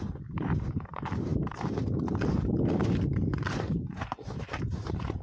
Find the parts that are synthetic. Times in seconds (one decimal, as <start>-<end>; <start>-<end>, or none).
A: 0.0-5.2